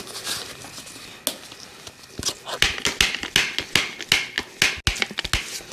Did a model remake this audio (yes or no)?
no